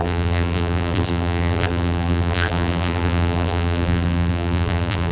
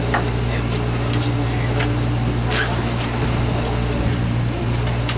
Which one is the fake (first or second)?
first